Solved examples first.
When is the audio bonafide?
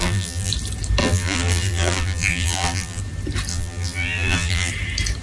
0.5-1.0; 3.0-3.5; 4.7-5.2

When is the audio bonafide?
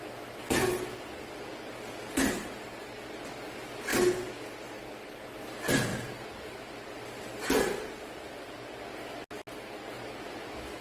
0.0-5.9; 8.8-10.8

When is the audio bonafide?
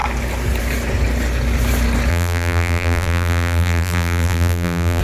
0.0-2.1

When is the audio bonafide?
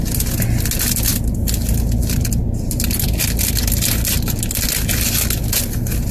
0.0-6.1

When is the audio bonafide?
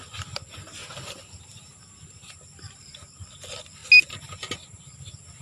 0.0-0.8; 3.3-5.4